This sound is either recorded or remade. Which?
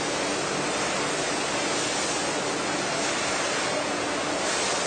recorded